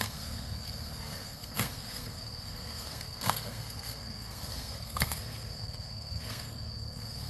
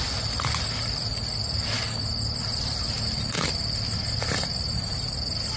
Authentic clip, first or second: second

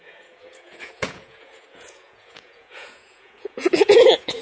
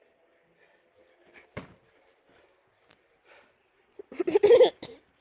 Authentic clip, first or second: second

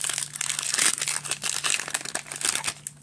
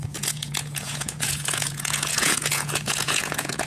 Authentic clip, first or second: first